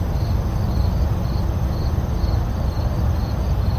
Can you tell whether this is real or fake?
real